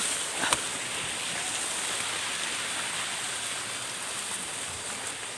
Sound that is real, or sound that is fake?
real